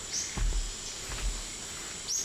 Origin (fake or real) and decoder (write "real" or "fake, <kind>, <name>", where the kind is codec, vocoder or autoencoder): real